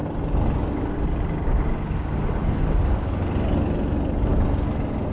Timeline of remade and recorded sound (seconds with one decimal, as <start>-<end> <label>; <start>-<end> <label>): 0.0-5.1 recorded